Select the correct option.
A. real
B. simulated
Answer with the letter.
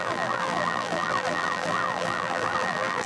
B